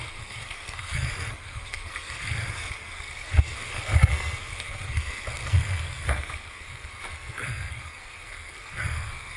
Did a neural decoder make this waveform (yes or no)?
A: yes